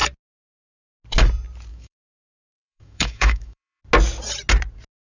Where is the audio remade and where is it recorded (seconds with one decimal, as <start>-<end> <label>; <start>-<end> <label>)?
0.0-1.7 recorded; 1.7-3.8 remade; 3.8-5.1 recorded